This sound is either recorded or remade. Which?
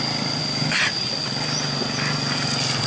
recorded